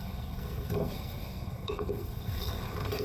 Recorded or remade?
remade